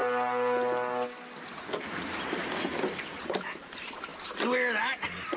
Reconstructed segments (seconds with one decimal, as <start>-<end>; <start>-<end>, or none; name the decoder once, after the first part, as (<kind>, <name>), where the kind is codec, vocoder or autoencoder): 3.2-4.1 (vocoder, BigVGAN v2); 4.8-5.4